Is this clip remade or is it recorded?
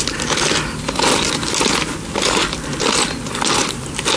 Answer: recorded